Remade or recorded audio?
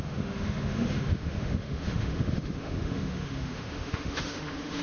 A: remade